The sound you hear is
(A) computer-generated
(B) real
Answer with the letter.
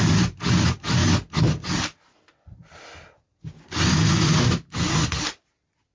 B